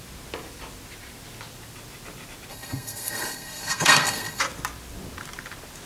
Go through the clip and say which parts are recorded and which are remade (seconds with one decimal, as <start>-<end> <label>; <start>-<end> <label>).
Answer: 0.0-2.5 recorded; 2.5-4.4 remade; 4.4-5.9 recorded